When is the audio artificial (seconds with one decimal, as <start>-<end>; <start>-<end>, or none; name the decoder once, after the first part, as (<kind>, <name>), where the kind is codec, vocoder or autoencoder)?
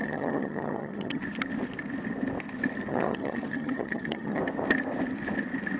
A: 0.0-1.2 (vocoder, HiFi-GAN); 2.9-4.4